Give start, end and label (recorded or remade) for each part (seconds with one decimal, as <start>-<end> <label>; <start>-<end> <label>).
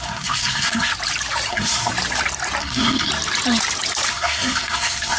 0.0-0.9 remade; 0.9-1.5 recorded; 1.5-1.9 remade; 1.9-2.6 recorded; 2.6-3.1 remade; 3.1-4.1 recorded; 4.1-5.2 remade